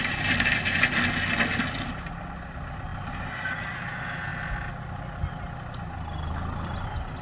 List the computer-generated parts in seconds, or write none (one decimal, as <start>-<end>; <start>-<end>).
none